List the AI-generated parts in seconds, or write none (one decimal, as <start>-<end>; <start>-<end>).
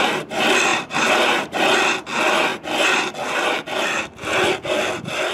0.7-1.6